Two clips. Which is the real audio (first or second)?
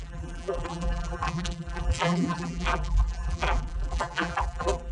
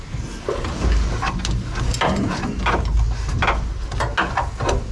second